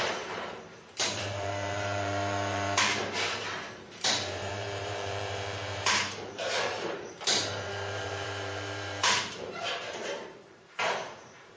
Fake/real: fake